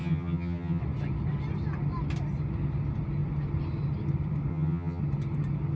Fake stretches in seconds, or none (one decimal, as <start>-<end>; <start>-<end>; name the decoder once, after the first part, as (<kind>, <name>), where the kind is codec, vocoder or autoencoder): 0.0-0.8 (vocoder, HiFi-GAN); 4.5-5.0